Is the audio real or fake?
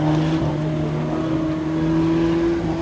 real